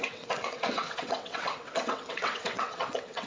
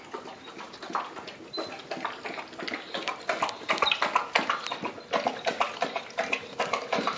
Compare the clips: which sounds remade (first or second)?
first